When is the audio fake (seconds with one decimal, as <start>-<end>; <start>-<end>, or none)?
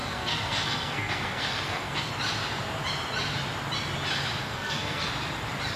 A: 0.0-2.1; 4.4-5.1